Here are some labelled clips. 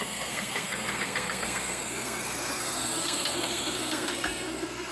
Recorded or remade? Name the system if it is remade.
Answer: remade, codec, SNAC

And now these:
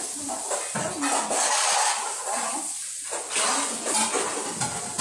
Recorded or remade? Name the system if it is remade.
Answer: recorded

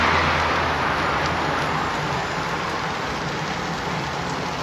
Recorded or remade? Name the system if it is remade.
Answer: recorded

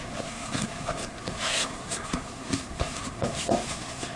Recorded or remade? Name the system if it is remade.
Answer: remade, codec, SNAC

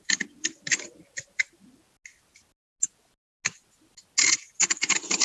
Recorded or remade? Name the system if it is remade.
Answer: recorded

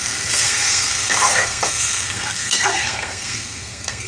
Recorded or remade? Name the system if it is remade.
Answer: remade, codec, SNAC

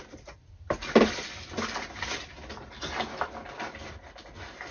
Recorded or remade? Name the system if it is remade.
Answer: recorded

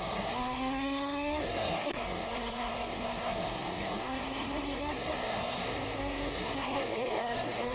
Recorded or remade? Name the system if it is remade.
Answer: remade, codec, SNAC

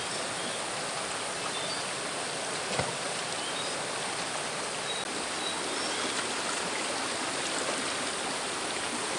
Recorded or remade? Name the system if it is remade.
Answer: recorded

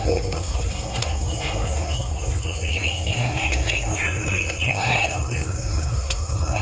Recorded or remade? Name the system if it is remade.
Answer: remade, codec, SNAC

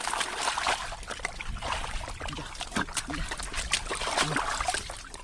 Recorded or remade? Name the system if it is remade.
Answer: recorded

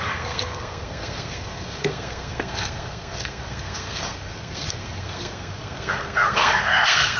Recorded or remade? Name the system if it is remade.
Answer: remade, codec, SNAC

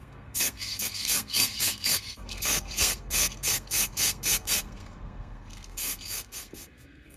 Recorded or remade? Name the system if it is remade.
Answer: remade, codec, SNAC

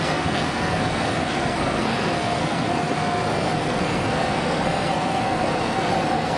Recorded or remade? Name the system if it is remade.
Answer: remade, codec, SNAC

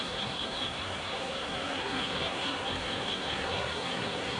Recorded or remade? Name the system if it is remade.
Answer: remade, codec, SNAC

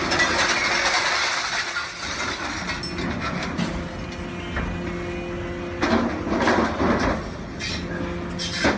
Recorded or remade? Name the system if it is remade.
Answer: recorded